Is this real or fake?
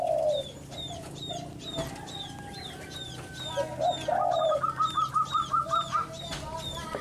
real